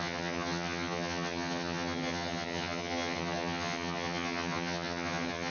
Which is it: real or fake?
fake